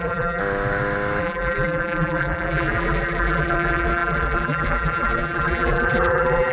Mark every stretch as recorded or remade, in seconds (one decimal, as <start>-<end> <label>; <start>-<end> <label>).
0.0-0.4 remade; 0.4-1.2 recorded; 1.2-6.5 remade